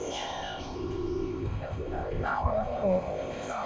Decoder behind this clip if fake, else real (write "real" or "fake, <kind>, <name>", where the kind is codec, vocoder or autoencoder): fake, codec, ZipCodec